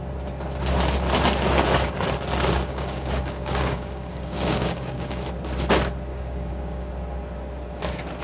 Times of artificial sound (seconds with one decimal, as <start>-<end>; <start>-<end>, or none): 2.7-5.2; 6.1-6.9

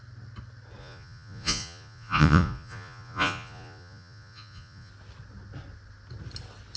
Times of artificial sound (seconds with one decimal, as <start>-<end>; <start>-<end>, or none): 0.8-4.9